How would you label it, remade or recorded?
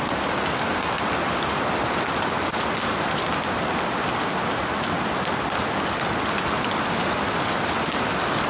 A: recorded